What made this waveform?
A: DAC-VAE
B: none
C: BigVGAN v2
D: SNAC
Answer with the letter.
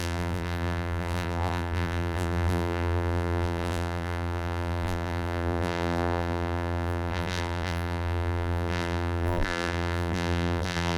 C